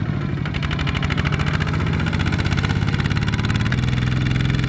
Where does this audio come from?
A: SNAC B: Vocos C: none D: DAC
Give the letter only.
C